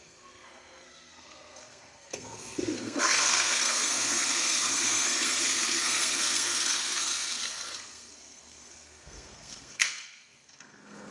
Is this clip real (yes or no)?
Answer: no